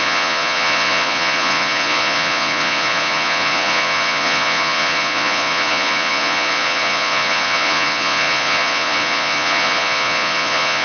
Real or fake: fake